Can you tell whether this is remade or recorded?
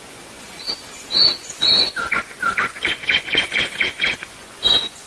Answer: remade